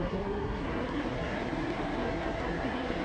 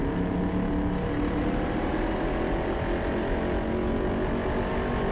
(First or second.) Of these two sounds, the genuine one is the second